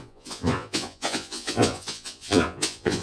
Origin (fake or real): fake